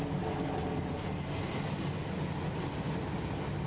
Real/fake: real